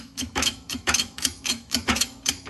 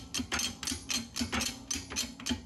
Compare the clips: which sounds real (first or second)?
second